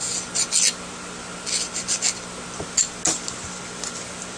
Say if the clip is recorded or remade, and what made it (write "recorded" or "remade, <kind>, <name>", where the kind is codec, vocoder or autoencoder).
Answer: recorded